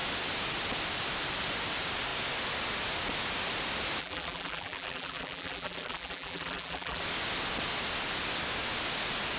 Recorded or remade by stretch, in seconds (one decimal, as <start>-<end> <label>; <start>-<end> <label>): 0.0-4.0 recorded; 4.0-7.0 remade; 7.0-9.4 recorded